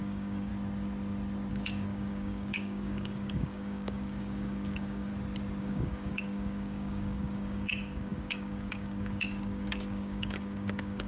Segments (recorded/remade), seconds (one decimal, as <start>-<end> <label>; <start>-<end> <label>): 0.0-0.5 remade; 0.5-1.5 recorded; 1.5-5.1 remade; 5.1-5.6 recorded; 5.6-11.1 remade